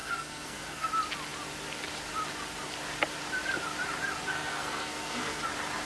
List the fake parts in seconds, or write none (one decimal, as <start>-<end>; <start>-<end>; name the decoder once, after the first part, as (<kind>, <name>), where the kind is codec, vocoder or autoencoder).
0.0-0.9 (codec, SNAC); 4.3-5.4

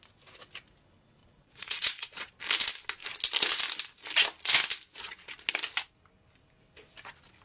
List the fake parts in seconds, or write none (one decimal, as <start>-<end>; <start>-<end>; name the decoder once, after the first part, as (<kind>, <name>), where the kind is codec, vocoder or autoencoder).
1.2-2.3 (vocoder, Vocos)

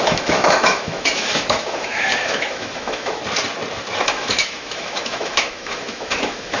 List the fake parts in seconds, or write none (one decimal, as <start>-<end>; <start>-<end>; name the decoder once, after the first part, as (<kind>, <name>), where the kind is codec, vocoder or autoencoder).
0.0-3.2 (autoencoder, DAC-VAE); 4.0-6.6